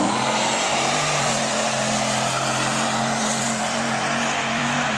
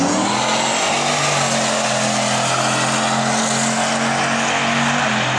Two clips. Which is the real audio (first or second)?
second